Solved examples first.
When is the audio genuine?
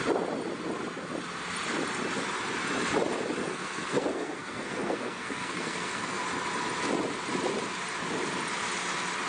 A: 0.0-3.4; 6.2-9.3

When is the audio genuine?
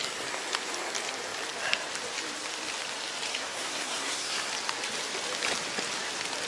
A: 0.0-3.3; 4.5-6.5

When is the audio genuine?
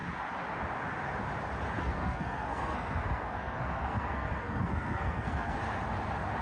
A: 0.0-1.8; 5.6-6.4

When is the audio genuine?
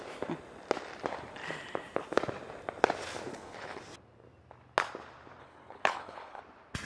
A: 0.0-3.3; 3.8-5.4; 6.4-6.9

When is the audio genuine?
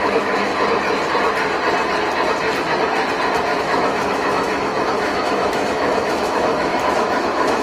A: 0.5-3.6